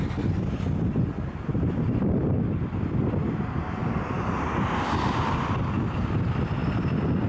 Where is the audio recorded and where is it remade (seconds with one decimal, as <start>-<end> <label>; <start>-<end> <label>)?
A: 0.0-1.5 recorded; 1.5-2.2 remade; 2.2-3.8 recorded; 3.8-5.6 remade; 5.6-7.3 recorded